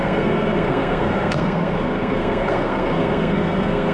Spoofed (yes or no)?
yes